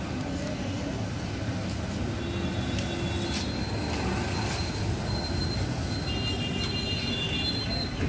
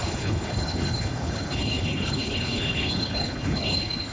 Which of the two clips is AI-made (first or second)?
second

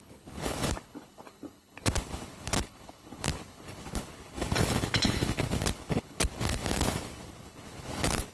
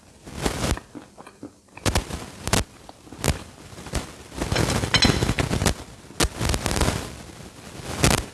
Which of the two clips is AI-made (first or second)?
first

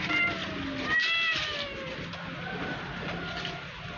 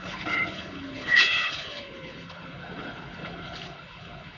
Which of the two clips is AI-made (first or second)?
second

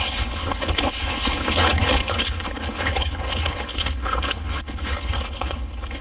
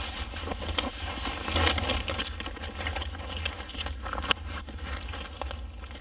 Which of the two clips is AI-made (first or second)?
first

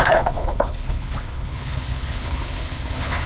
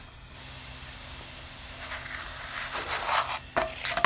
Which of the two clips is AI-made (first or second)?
first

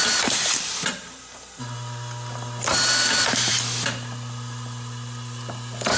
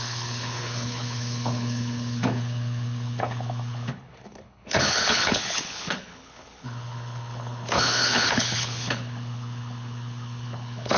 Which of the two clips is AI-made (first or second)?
second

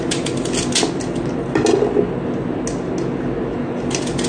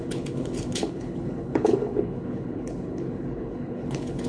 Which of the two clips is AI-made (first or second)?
second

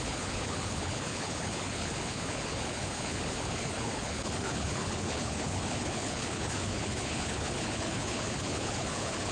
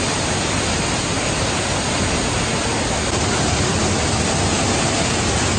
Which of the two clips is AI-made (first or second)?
first